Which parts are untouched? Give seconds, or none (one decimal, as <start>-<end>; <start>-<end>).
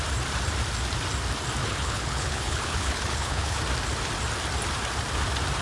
0.0-1.6; 3.6-5.6